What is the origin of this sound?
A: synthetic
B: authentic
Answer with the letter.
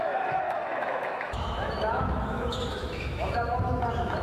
A